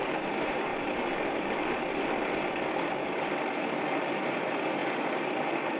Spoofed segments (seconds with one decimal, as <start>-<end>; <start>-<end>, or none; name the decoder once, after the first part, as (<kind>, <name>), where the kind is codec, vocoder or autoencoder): 0.0-0.7 (vocoder, BigVGAN v2); 4.2-5.8